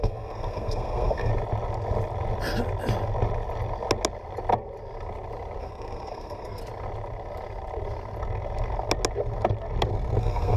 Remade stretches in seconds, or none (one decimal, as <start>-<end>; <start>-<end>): 0.0-1.3; 5.6-6.6; 10.2-10.6